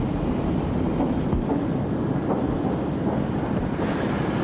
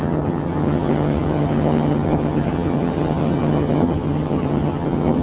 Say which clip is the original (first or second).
first